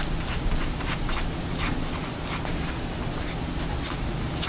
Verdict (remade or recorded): recorded